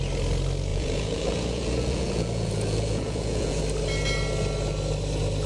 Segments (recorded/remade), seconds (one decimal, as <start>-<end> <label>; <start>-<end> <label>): 0.0-0.7 recorded; 0.7-3.6 remade; 3.6-5.5 recorded